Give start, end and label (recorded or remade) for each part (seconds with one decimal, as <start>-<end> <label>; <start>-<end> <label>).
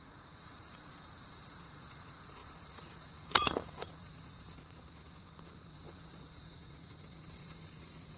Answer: 0.0-8.2 remade